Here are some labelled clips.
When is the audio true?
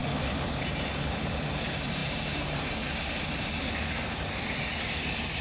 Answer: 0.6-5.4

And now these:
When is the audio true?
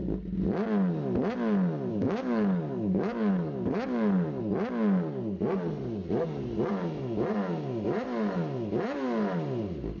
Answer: 0.0-1.9; 4.4-10.0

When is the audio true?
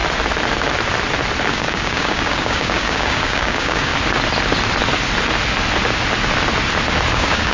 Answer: 0.0-1.5; 3.9-7.1